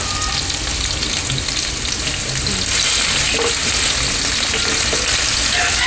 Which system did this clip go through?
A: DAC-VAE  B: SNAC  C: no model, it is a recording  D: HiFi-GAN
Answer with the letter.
C